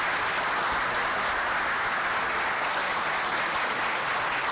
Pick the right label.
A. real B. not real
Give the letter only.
A